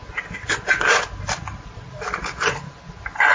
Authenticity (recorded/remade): recorded